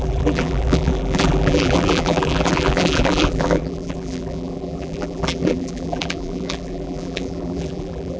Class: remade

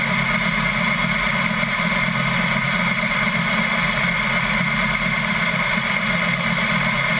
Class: recorded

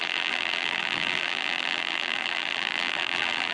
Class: remade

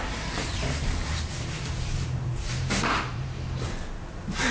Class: remade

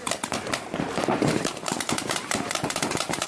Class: remade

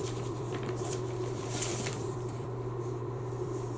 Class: remade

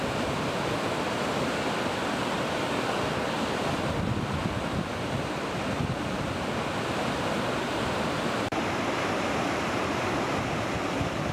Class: remade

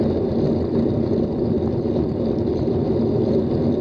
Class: remade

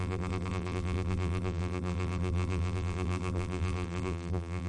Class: remade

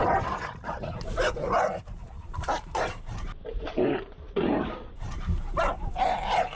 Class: remade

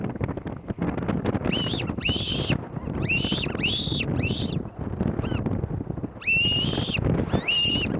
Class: recorded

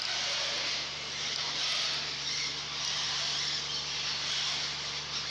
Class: recorded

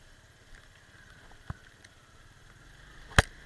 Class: recorded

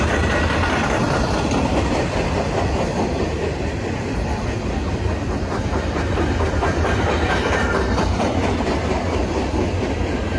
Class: remade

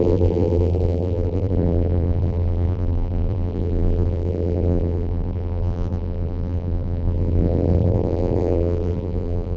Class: remade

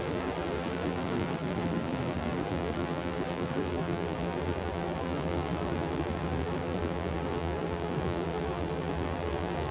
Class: remade